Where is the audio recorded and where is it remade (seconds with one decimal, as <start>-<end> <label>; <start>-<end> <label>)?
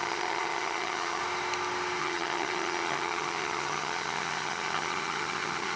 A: 0.0-1.2 remade; 1.2-2.0 recorded; 2.0-5.8 remade